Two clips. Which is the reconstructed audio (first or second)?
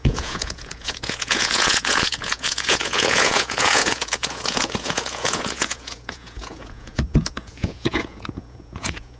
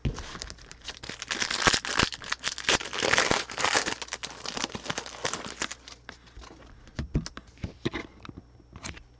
first